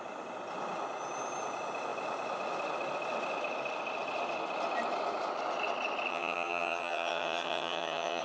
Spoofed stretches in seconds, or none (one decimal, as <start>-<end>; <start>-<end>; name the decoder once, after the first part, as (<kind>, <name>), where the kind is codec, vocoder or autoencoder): 6.1-8.2 (vocoder, HiFi-GAN)